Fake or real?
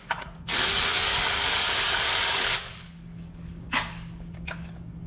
fake